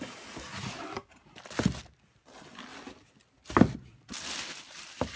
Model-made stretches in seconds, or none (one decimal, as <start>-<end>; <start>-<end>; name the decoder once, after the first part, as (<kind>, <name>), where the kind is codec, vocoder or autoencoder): none